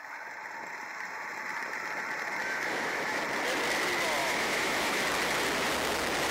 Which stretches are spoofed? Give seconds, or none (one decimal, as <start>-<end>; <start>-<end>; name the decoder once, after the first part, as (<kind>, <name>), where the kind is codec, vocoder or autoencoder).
2.4-3.2 (autoencoder, DAC-VAE); 4.2-5.0

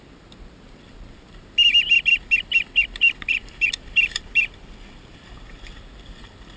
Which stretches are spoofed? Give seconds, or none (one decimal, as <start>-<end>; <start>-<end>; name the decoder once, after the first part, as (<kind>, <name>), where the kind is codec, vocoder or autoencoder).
none

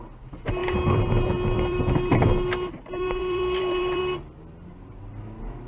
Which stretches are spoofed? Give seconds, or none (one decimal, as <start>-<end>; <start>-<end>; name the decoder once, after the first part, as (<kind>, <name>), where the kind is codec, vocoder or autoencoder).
0.6-4.0 (vocoder, BigVGAN v2)

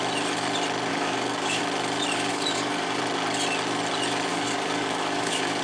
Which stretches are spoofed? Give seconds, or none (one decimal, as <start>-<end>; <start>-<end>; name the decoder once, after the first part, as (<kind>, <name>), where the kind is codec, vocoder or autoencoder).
0.9-1.6 (codec, DAC); 2.3-3.0; 4.3-5.6

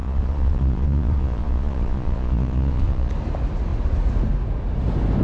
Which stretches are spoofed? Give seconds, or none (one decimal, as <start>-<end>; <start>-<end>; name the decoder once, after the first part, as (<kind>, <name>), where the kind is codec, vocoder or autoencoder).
0.0-3.1 (vocoder, Vocos)